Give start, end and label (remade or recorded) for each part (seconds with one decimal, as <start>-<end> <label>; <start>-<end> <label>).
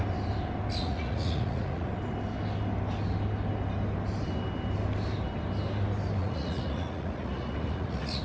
0.0-0.8 recorded; 0.8-1.9 remade; 1.9-6.2 recorded; 6.2-8.2 remade